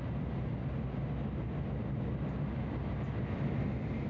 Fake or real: real